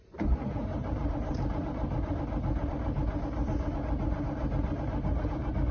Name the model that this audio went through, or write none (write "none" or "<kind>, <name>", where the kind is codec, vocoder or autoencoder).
vocoder, BigVGAN v2